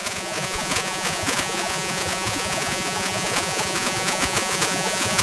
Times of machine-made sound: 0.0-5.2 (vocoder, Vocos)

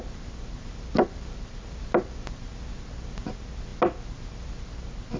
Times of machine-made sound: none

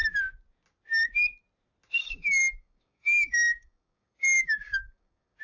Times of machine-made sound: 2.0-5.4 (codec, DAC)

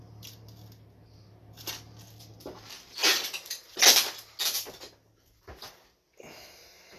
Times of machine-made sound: none

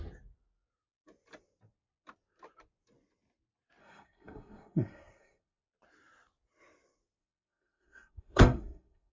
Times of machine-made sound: 3.8-5.6 (codec, SNAC); 7.2-9.1